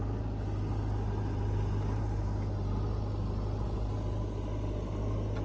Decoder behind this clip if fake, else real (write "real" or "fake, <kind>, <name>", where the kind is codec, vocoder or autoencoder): real